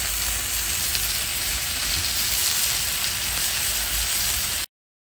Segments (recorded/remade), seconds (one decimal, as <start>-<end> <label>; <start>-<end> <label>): 0.0-1.3 recorded; 1.3-1.9 remade; 1.9-5.0 recorded